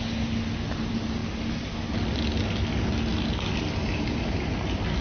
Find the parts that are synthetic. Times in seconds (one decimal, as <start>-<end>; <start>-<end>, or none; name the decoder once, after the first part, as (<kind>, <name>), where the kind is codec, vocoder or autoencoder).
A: none